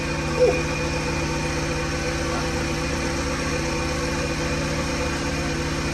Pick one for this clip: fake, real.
real